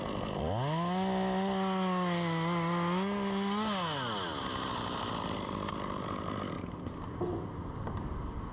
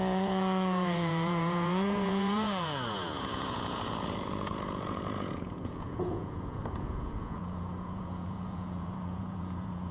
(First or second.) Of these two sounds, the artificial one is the second